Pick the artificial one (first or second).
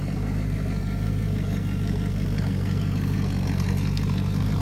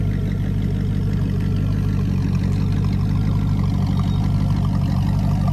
first